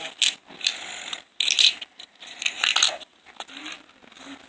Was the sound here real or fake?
real